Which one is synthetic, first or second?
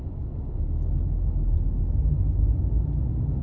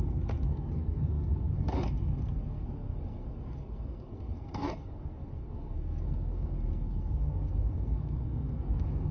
second